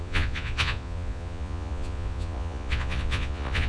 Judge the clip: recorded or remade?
remade